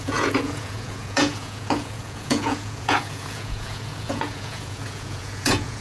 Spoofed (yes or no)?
yes